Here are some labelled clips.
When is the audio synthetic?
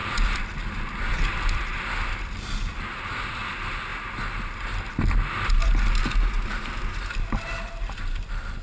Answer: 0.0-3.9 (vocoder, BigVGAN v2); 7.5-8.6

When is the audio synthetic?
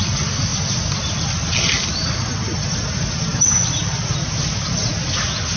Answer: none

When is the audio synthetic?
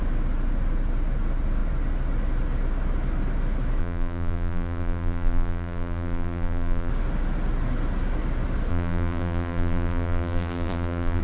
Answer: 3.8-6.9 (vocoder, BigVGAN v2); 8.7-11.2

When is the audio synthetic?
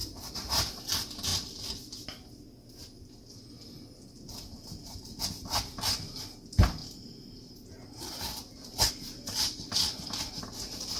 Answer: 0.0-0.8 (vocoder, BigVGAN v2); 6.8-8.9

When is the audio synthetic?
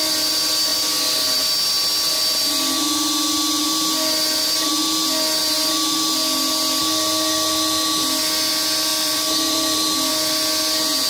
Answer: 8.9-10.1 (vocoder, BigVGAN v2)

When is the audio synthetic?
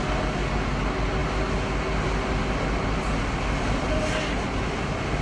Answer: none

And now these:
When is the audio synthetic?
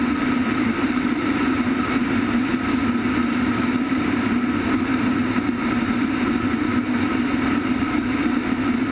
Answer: 0.0-2.8 (vocoder, BigVGAN v2); 3.8-8.9